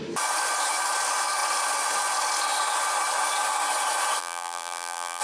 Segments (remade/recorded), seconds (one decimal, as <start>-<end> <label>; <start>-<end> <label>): 0.0-4.2 recorded; 4.2-5.2 remade